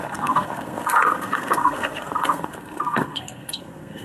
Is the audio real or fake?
fake